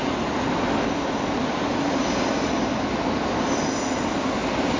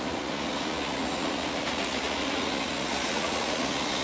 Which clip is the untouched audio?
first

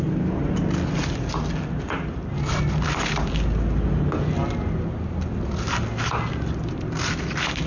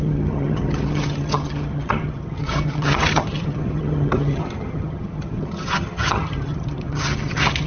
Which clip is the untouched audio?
first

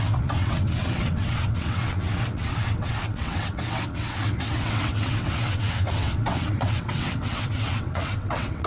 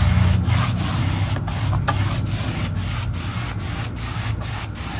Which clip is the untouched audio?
second